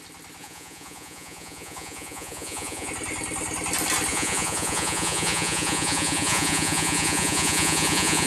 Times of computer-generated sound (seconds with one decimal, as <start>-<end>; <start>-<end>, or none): 0.4-2.9; 4.1-8.3